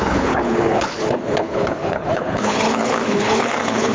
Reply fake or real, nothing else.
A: fake